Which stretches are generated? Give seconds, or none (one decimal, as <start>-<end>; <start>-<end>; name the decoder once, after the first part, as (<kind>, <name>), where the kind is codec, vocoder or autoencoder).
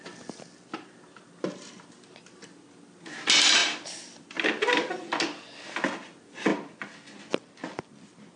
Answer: none